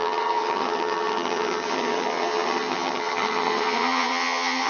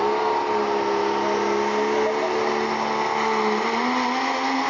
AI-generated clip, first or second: first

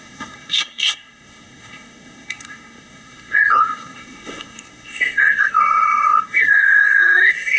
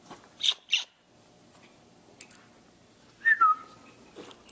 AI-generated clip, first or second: first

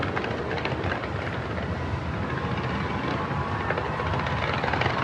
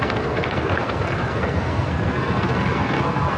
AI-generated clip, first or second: second